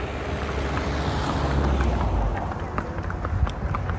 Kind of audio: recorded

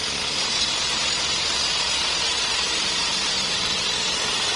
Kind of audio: remade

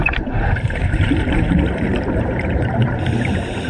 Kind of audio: remade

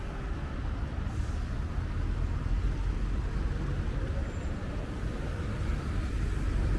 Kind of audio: recorded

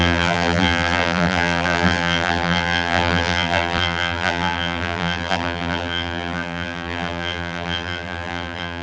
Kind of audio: remade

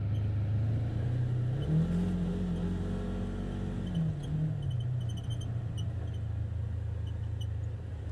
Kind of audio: recorded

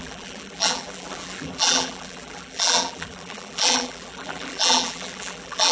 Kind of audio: remade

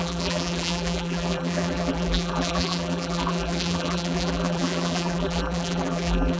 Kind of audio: remade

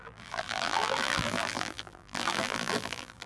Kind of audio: remade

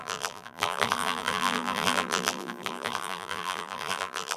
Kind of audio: remade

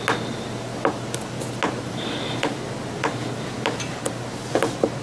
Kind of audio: recorded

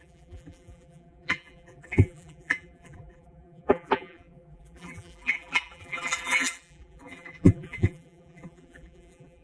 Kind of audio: remade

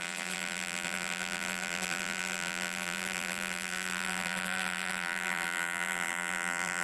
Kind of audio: remade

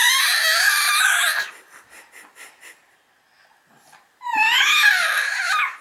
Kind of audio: recorded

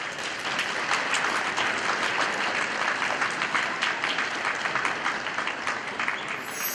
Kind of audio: recorded